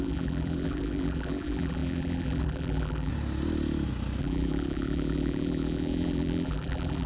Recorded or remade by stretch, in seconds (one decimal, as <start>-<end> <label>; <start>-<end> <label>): 0.0-3.1 remade; 3.1-4.2 recorded; 4.2-7.1 remade